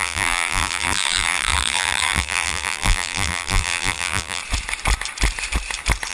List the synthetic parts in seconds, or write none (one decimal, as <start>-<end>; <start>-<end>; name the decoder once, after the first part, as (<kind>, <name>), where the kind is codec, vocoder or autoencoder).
0.0-4.4 (vocoder, BigVGAN v2)